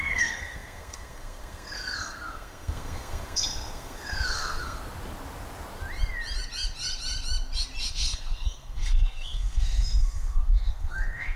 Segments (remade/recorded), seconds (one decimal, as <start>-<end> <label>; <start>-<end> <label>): 0.0-4.8 remade; 4.8-7.9 recorded; 7.9-11.4 remade